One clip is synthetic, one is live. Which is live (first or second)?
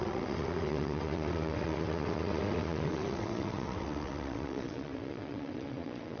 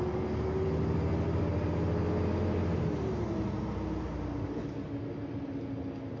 second